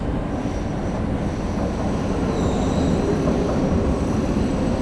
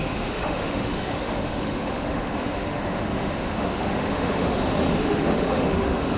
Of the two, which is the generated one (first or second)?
second